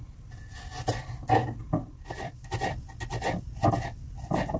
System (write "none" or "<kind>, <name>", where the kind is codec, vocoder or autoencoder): none